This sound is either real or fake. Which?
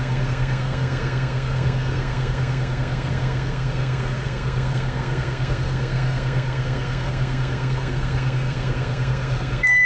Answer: fake